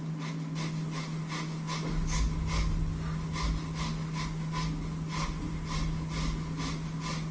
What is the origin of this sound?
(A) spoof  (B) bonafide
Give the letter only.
B